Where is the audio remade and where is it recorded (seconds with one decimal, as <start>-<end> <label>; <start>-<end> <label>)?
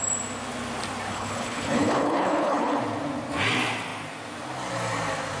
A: 0.0-1.1 recorded; 1.1-2.8 remade; 2.8-5.4 recorded